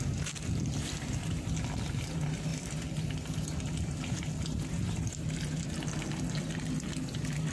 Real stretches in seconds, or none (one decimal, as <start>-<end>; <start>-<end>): 0.0-7.5